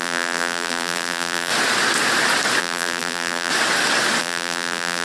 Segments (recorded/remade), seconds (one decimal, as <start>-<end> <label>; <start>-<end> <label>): 0.0-1.5 remade; 1.5-2.6 recorded; 2.6-3.5 remade; 3.5-4.2 recorded; 4.2-5.0 remade